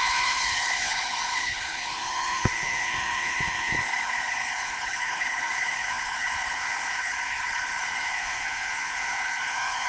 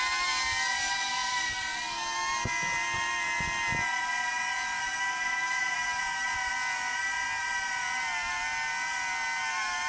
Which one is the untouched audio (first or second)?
second